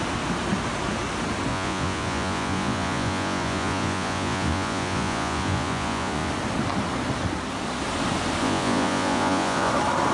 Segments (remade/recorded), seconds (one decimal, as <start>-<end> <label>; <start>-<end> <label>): 0.0-1.5 recorded; 1.5-6.3 remade; 6.3-8.4 recorded; 8.4-9.7 remade; 9.7-10.1 recorded